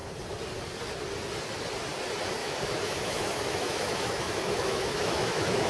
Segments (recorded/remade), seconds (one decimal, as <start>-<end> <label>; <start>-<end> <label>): 0.0-2.4 recorded; 2.4-5.7 remade